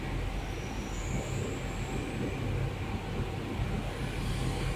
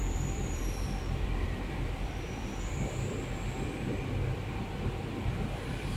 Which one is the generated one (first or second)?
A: second